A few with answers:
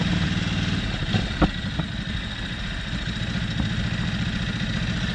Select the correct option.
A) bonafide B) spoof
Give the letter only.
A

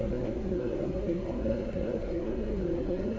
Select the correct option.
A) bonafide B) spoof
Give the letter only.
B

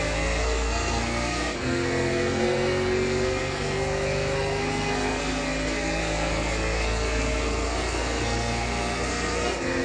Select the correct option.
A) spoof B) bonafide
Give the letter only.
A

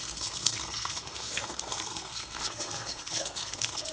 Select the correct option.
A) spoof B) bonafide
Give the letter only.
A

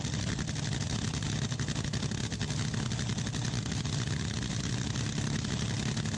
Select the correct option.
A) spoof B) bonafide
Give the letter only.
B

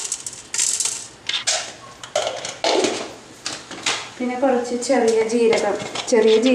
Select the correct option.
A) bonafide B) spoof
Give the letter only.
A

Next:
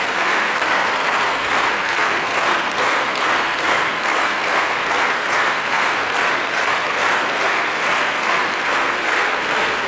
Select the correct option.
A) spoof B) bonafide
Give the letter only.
A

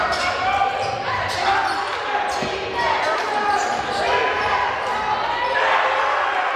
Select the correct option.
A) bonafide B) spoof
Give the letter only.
A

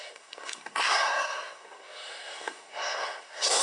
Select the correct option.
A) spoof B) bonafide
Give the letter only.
A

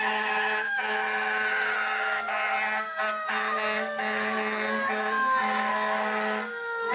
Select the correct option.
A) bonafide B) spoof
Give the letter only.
B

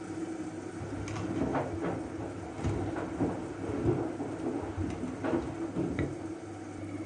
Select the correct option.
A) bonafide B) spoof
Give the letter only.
A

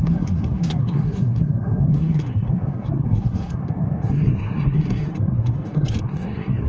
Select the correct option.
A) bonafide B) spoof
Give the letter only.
B